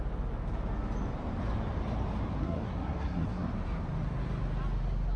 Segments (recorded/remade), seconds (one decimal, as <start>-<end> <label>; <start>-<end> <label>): 0.0-2.4 recorded; 2.4-3.5 remade; 3.5-5.2 recorded